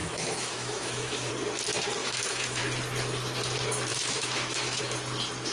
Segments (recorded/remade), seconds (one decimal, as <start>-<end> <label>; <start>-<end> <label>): 0.0-1.3 remade; 1.3-2.0 recorded; 2.0-2.6 remade; 2.6-3.9 recorded; 3.9-4.8 remade; 4.8-5.5 recorded